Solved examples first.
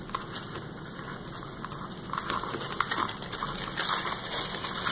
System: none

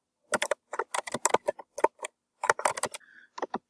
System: none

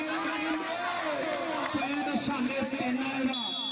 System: none